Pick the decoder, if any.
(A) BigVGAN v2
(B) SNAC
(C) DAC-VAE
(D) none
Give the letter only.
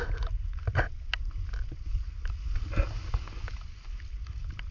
D